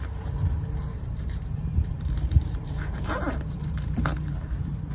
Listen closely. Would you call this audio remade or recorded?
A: remade